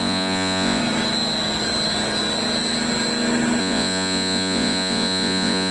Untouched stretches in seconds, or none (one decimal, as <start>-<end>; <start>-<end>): 0.8-3.6